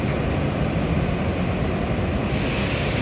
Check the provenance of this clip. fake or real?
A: real